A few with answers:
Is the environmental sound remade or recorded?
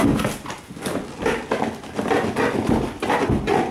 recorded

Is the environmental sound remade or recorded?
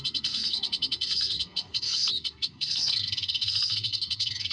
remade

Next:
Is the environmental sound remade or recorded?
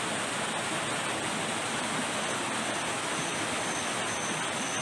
recorded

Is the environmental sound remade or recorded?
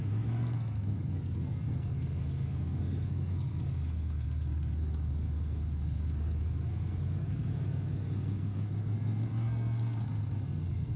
remade